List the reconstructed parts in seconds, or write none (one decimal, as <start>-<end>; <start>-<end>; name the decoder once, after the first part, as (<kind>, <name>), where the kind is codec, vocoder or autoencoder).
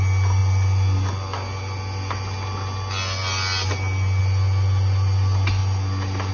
none